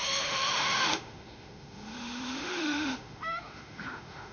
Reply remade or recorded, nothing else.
remade